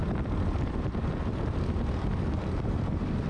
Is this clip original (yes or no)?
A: no